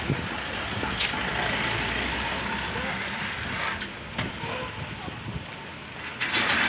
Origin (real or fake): real